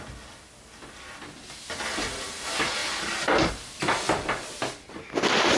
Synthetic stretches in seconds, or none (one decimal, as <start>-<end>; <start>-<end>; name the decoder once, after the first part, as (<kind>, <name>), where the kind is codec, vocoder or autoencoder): none